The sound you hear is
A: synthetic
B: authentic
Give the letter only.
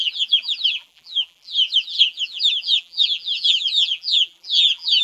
A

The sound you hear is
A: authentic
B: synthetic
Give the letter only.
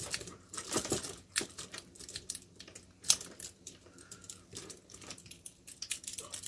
B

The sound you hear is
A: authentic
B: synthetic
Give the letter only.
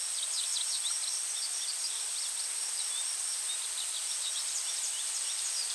B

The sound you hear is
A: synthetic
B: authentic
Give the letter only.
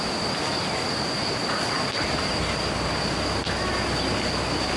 B